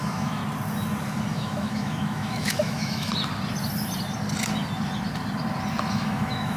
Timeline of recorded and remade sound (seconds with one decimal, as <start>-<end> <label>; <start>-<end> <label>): 0.0-0.4 remade; 0.4-1.3 recorded; 1.3-3.1 remade; 3.1-5.9 recorded; 5.9-6.6 remade